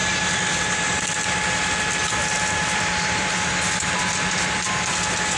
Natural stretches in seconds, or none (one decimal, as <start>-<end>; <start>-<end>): 0.0-5.4